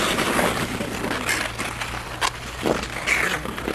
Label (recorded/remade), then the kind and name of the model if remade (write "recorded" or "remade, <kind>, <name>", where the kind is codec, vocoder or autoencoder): recorded